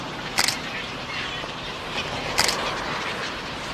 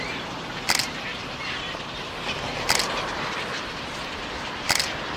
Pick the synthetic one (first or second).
second